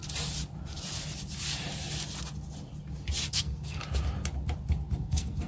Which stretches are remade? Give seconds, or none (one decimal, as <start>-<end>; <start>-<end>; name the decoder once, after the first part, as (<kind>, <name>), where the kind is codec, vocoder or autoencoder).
3.3-3.8 (codec, SNAC); 5.0-5.5